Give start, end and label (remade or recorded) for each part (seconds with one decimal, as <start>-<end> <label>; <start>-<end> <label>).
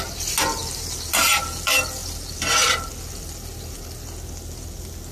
0.0-5.1 recorded